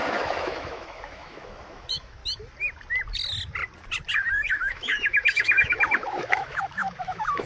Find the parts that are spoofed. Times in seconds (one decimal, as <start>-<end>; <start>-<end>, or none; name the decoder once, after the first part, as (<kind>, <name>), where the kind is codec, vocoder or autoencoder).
0.0-2.2 (autoencoder, DAC-VAE); 4.5-7.5